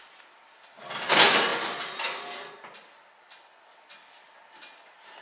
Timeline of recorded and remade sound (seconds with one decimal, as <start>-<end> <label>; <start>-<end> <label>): 0.0-5.2 recorded